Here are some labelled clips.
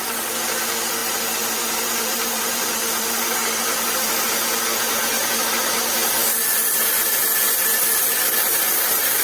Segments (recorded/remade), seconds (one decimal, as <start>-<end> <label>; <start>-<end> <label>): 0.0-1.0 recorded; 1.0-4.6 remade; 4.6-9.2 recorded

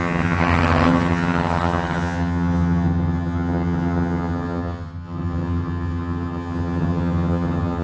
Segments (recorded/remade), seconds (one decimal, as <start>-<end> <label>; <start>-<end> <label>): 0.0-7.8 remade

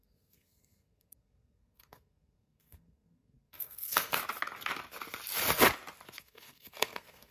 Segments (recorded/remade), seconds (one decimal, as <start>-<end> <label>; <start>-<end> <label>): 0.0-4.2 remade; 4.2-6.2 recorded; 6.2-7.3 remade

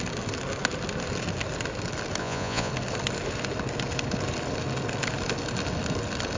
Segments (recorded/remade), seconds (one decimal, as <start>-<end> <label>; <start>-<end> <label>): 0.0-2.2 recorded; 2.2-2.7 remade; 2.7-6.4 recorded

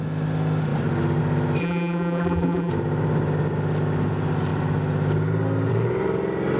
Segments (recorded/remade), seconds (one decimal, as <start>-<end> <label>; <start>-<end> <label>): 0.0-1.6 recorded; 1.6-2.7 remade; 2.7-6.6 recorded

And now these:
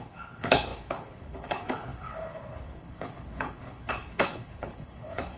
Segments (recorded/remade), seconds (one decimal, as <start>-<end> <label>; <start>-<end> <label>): 0.0-5.4 remade

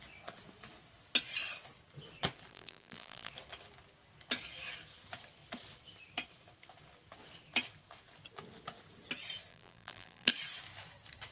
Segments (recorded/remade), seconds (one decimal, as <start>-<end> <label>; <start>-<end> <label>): 0.0-2.5 recorded; 2.5-3.3 remade; 3.3-9.5 recorded; 9.5-10.3 remade; 10.3-11.3 recorded